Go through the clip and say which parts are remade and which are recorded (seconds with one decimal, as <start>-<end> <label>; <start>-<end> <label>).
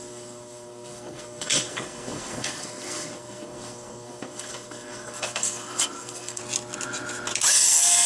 0.0-6.4 remade; 6.4-7.5 recorded; 7.5-8.1 remade